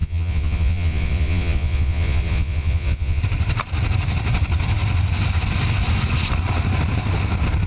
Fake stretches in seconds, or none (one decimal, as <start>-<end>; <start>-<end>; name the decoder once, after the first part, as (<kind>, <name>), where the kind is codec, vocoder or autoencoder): 0.0-3.2 (vocoder, Vocos)